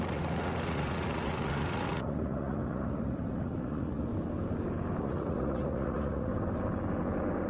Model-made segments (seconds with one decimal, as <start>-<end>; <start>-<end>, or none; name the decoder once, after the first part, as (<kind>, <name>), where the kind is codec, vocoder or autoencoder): 0.0-4.1 (vocoder, Vocos); 5.0-6.3